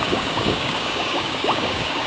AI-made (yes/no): yes